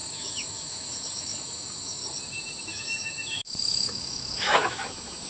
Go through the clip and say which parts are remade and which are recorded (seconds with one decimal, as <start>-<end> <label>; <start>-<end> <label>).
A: 0.0-2.0 remade; 2.0-2.6 recorded; 2.6-5.3 remade